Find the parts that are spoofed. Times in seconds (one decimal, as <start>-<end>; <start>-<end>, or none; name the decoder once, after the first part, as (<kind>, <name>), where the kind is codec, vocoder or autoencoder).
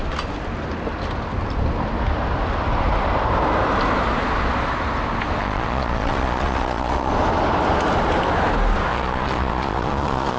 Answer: 5.4-7.1 (vocoder, Vocos); 8.9-10.4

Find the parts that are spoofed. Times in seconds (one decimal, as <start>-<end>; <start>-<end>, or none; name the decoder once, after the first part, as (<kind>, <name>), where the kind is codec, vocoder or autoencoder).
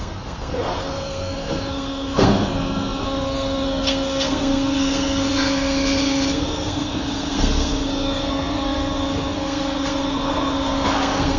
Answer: 0.0-11.4 (codec, SNAC)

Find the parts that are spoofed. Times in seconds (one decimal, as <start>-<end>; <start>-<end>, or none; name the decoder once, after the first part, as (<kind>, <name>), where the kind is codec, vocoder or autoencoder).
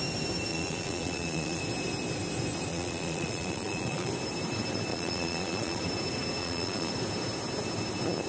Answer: 0.5-1.6 (vocoder, Vocos); 2.7-4.1; 4.9-5.8; 6.4-6.9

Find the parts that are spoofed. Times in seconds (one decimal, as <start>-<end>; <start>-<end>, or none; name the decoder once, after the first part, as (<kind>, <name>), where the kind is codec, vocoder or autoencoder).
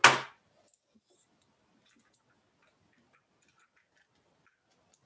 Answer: none